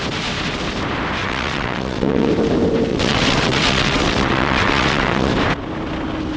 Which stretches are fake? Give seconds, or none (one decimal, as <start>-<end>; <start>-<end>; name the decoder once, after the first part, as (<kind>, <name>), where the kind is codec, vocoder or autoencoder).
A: 1.2-2.3 (vocoder, WaveNeXt); 2.9-5.3